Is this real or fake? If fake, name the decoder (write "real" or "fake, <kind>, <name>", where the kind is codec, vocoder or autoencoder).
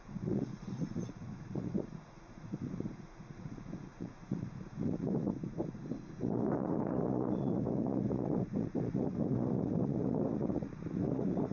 fake, vocoder, Vocos